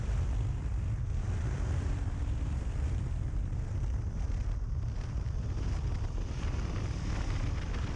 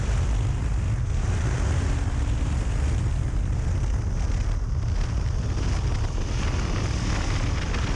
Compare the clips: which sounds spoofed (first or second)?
first